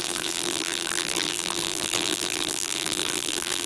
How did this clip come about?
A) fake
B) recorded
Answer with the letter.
A